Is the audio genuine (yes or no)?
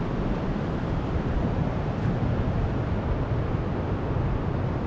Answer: yes